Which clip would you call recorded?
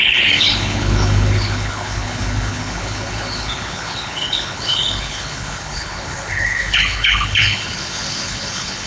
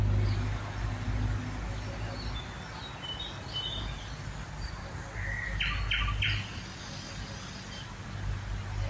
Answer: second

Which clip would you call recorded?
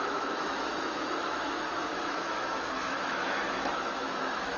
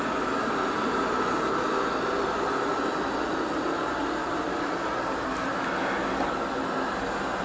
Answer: second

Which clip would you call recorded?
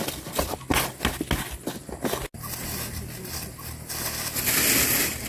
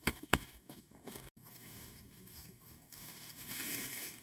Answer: first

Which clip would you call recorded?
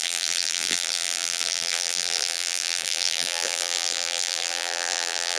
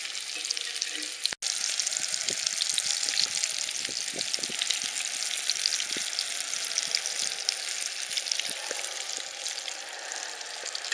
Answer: second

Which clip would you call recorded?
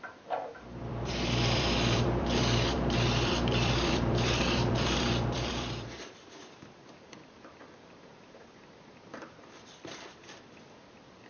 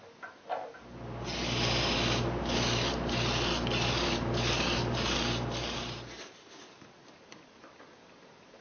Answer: second